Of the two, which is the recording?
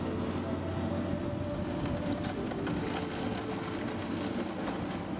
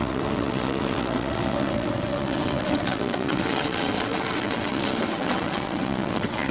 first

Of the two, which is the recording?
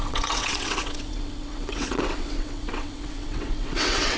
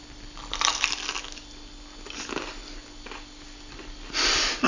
second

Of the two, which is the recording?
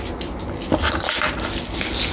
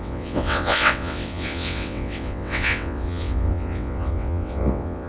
first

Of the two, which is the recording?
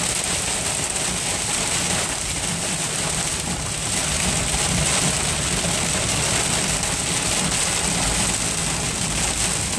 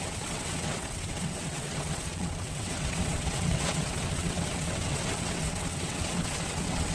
first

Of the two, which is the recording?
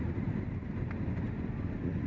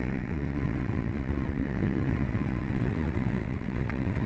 first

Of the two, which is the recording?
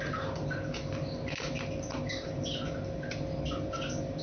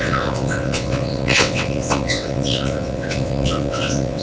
first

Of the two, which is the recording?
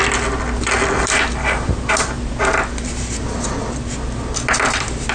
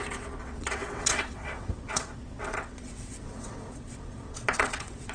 first